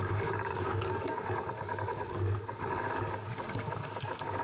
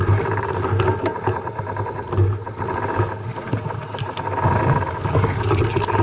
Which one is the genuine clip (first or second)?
second